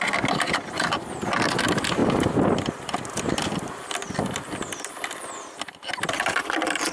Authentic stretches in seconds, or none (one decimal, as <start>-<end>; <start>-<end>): 0.0-2.0; 6.1-6.9